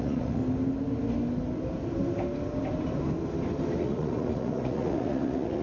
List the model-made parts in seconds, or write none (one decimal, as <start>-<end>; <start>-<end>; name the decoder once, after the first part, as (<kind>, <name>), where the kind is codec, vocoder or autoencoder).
0.0-0.4 (vocoder, Vocos); 3.8-5.6